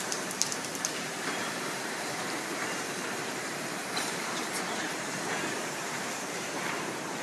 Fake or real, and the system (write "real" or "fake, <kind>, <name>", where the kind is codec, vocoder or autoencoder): fake, vocoder, BigVGAN v2